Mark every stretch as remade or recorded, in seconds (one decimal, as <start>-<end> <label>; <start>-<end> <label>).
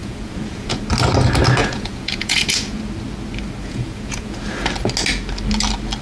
0.0-0.8 remade; 0.8-1.6 recorded; 1.6-2.8 remade; 2.8-3.6 recorded; 3.6-4.4 remade; 4.4-6.0 recorded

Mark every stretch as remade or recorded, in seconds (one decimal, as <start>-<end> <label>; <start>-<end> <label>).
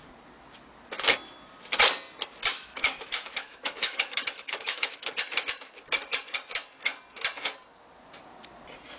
0.0-2.5 recorded; 2.5-5.1 remade; 5.1-9.0 recorded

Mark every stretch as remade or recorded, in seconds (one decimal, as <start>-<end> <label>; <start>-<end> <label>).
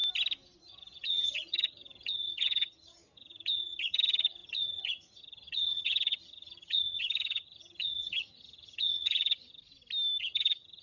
0.0-0.6 recorded; 0.6-9.6 remade; 9.6-10.2 recorded; 10.2-10.8 remade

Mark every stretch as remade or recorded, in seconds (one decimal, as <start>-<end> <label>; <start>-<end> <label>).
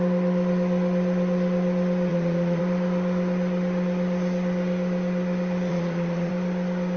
0.0-2.1 recorded; 2.1-2.6 remade; 2.6-5.7 recorded; 5.7-6.3 remade; 6.3-7.0 recorded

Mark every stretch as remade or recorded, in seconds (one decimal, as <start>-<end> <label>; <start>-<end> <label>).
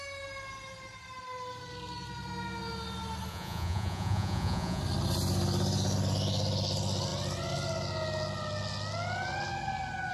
0.0-3.3 recorded; 3.3-4.8 remade; 4.8-10.1 recorded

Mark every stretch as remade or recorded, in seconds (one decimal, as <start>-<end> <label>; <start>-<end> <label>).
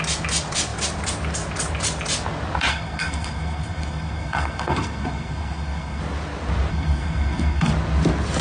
0.0-2.7 recorded; 2.7-6.0 remade; 6.0-6.7 recorded; 6.7-7.7 remade; 7.7-8.4 recorded